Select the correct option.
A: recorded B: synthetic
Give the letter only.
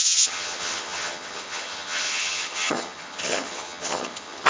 B